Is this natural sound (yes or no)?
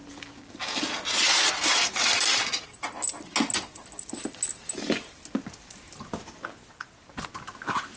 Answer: yes